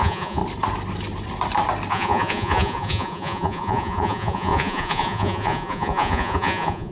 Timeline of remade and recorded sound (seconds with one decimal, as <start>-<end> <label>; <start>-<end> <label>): 0.0-0.4 remade; 0.4-1.9 recorded; 1.9-6.9 remade